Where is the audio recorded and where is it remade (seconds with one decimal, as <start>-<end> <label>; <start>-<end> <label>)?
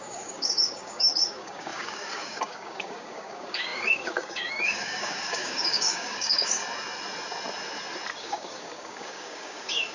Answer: 0.0-6.6 remade; 6.6-8.2 recorded; 8.2-9.9 remade